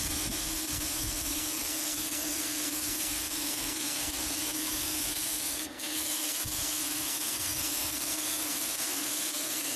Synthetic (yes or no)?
yes